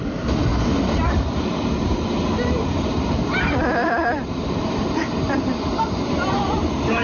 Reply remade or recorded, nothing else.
remade